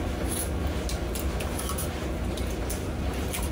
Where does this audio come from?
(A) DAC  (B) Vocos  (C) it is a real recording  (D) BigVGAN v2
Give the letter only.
C